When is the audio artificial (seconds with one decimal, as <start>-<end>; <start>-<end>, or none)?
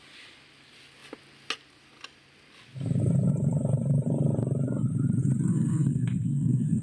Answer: 5.5-6.8